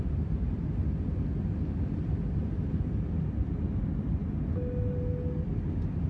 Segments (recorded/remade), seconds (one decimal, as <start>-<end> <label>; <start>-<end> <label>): 0.0-6.1 recorded